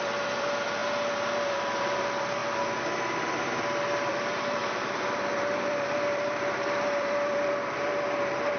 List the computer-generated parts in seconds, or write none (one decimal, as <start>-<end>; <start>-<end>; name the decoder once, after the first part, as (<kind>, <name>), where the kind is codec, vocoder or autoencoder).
0.0-2.4 (vocoder, BigVGAN v2); 4.0-8.6